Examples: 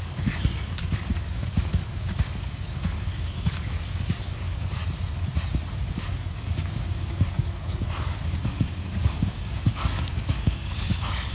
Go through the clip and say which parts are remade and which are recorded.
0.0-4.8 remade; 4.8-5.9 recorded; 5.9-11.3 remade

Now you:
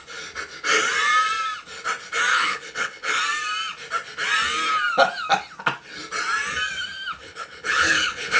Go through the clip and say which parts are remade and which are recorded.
0.0-2.3 recorded; 2.3-3.2 remade; 3.2-7.2 recorded; 7.2-8.4 remade

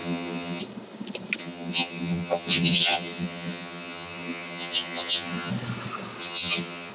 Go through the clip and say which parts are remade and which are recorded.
0.0-0.6 remade; 0.6-1.4 recorded; 1.4-5.5 remade; 5.5-6.2 recorded; 6.2-6.9 remade

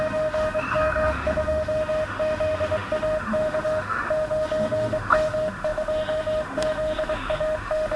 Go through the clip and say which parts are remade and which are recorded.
0.0-8.0 remade